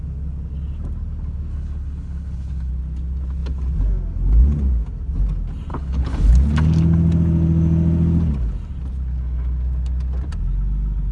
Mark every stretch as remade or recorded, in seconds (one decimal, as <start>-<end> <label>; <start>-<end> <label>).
0.0-1.5 recorded; 1.5-2.7 remade; 2.7-5.7 recorded; 5.7-6.3 remade; 6.3-11.1 recorded